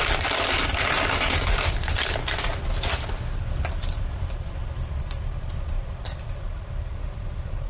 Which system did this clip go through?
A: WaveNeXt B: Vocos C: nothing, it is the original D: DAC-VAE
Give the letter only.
C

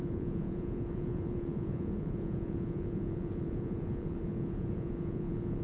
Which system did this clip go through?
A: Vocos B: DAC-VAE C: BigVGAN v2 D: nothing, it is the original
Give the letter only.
A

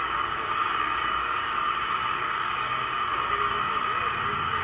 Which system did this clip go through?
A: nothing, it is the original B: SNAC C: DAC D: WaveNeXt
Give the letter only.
C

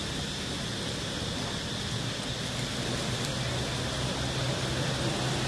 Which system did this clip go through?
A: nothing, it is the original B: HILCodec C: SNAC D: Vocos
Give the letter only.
A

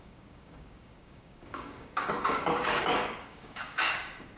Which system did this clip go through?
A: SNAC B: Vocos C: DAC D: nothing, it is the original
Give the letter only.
C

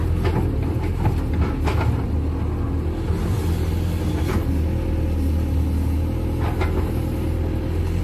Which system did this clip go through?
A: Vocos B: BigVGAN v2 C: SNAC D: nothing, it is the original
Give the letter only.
D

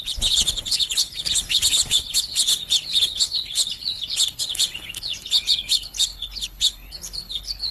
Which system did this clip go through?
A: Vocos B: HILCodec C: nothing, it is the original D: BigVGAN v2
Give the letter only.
B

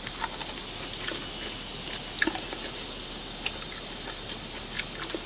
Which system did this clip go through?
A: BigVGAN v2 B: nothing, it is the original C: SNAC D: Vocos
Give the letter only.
B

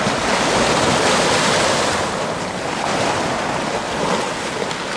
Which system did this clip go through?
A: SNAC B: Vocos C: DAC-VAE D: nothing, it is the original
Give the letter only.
D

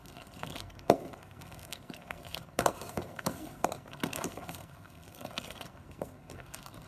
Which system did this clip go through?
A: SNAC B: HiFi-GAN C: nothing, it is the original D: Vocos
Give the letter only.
A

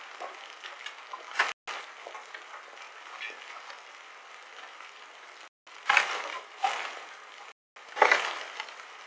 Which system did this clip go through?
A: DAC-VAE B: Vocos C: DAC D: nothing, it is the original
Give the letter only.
D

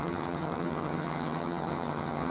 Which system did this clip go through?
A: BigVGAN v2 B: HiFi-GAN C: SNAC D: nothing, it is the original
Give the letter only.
B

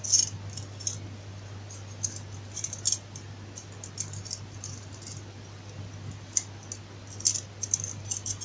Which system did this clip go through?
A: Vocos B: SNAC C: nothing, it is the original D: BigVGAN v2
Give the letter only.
C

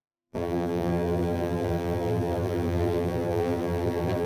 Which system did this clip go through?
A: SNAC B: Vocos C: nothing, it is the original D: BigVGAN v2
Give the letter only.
D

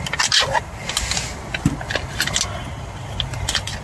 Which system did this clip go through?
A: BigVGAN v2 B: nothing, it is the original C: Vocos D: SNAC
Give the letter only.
B